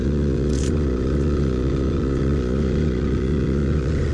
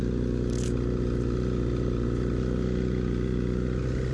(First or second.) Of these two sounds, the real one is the second